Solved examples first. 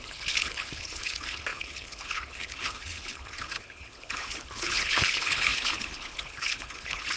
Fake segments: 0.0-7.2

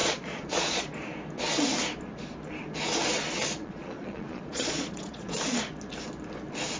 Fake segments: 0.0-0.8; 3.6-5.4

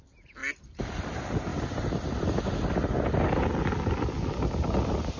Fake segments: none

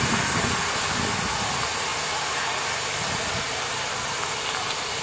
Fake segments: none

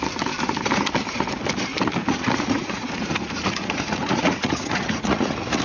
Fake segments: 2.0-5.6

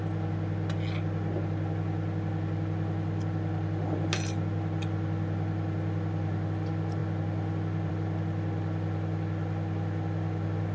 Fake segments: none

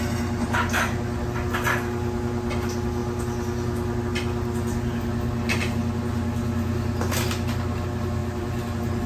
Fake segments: none